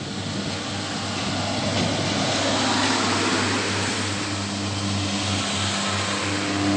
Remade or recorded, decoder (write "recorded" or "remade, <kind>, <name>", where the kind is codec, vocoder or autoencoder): recorded